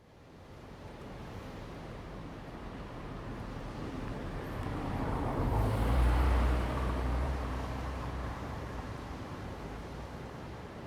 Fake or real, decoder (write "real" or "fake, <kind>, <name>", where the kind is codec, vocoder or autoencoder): fake, vocoder, BigVGAN v2